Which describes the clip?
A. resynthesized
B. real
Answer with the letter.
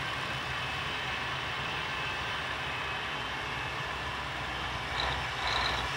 B